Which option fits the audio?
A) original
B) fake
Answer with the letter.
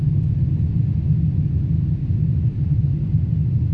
A